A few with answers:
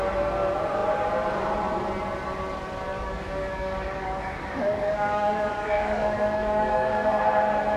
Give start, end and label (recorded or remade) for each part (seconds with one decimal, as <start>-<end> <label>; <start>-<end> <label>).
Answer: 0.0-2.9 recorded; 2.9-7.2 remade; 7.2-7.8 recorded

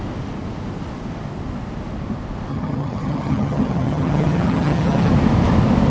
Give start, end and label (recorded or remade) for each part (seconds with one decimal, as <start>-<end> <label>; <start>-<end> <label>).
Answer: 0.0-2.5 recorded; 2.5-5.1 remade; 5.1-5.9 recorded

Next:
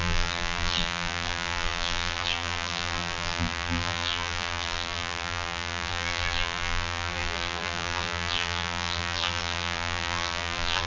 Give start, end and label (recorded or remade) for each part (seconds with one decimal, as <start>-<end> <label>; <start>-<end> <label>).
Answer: 0.0-10.9 remade

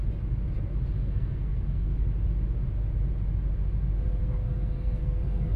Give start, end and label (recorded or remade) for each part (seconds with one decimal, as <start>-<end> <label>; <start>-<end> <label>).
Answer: 0.0-1.0 recorded; 1.0-2.0 remade; 2.0-4.2 recorded; 4.2-5.6 remade

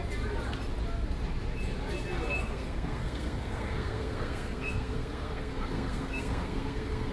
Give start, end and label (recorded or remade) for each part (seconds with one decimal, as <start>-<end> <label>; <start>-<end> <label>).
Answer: 0.0-2.4 recorded; 2.4-7.1 remade